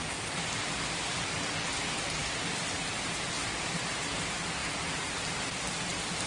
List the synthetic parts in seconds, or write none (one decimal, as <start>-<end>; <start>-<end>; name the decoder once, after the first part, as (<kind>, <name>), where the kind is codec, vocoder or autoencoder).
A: none